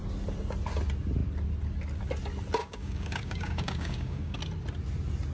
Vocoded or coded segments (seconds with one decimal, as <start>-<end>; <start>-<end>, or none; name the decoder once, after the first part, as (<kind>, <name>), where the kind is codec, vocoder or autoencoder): 2.6-4.4 (codec, DAC)